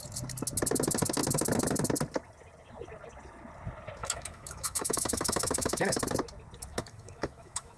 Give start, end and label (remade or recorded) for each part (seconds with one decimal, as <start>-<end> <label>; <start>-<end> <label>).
0.0-4.0 recorded; 4.0-6.0 remade; 6.0-6.7 recorded; 6.7-7.8 remade